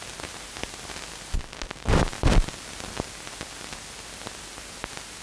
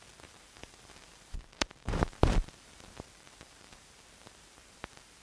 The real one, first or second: first